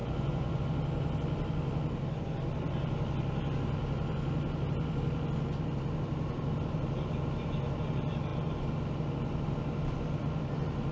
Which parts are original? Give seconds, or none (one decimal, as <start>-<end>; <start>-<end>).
0.6-10.9